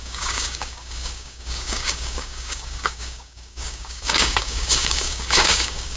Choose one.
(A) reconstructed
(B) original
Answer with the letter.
A